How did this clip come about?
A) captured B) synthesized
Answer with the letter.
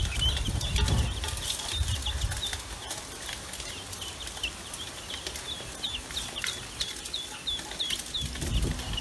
A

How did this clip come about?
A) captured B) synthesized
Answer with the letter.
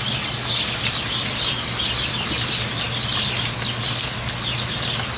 A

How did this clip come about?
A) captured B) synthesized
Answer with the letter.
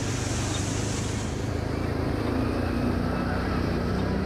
A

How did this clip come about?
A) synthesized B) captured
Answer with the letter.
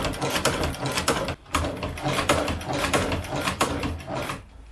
B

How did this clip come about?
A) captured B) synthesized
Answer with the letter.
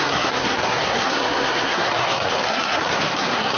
B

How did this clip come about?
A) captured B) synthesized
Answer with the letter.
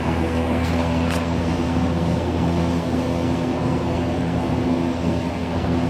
B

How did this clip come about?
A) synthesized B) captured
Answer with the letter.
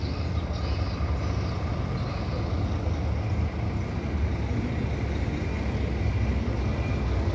B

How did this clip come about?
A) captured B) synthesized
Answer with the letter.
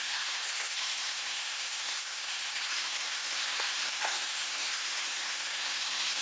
B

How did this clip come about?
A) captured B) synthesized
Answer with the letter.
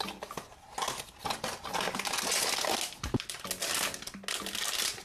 A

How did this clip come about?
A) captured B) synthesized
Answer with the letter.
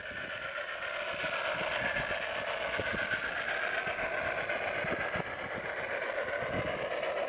A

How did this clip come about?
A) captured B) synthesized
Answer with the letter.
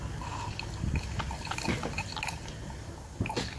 A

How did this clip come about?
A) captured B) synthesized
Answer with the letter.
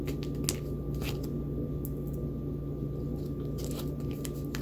A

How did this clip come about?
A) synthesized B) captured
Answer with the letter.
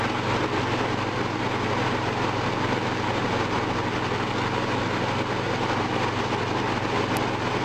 B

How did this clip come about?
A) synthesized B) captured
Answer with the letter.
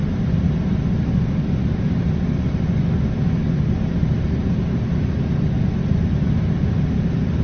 B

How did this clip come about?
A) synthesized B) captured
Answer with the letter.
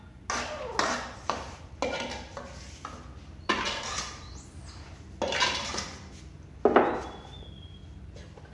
B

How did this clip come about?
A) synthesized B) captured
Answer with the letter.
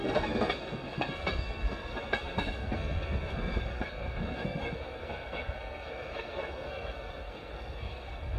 A